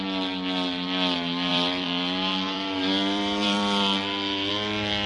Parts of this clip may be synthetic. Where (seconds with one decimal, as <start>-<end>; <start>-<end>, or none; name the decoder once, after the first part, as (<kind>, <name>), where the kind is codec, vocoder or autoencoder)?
1.5-4.5 (vocoder, BigVGAN v2)